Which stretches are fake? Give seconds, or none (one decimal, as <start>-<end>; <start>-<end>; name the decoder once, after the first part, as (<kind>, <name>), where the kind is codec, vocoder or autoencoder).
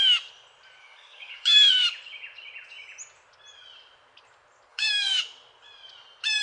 0.8-1.7 (codec, DAC); 4.7-5.2